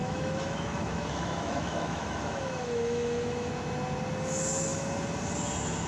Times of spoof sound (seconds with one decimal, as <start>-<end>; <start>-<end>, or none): 0.0-3.5